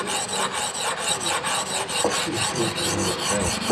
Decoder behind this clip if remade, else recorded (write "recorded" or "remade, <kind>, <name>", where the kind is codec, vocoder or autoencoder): recorded